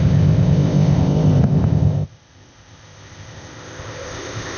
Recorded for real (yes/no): no